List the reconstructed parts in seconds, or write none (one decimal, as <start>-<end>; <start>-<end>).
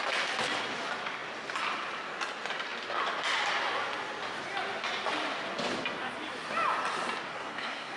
7.3-8.0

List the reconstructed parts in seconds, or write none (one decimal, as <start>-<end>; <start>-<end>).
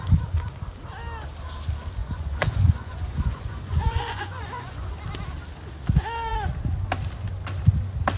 2.0-4.9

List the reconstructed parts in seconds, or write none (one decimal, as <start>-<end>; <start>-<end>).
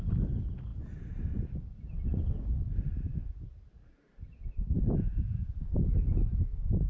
none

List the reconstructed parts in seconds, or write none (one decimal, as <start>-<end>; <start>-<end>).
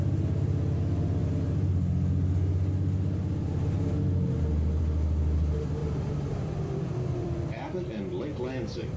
5.8-7.9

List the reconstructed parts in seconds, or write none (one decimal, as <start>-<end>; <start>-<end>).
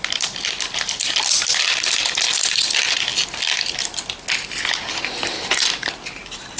none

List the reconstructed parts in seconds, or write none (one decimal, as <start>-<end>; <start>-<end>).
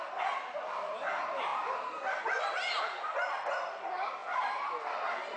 none